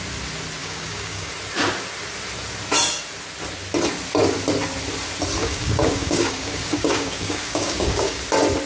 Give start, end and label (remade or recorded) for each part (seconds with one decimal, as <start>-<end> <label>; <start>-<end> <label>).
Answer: 0.0-0.6 recorded; 0.6-1.3 remade; 1.3-5.4 recorded; 5.4-8.2 remade; 8.2-8.7 recorded